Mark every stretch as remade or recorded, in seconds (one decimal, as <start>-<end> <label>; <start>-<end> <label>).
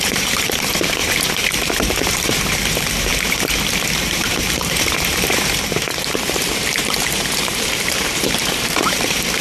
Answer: 0.0-3.1 remade; 3.1-3.7 recorded; 3.7-9.4 remade